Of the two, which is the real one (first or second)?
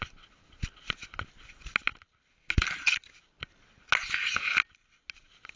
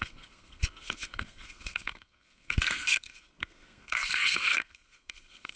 first